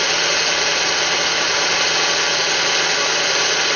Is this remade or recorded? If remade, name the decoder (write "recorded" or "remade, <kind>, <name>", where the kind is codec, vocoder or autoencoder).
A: recorded